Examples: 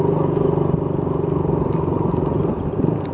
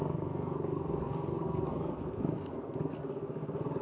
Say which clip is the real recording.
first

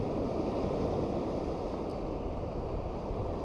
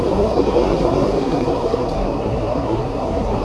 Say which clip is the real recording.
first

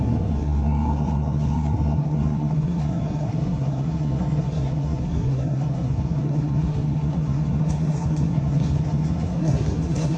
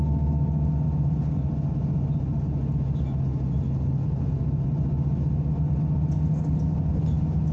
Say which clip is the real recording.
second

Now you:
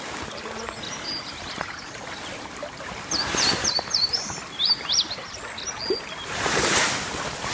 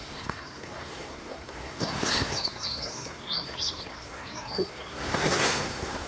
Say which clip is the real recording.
first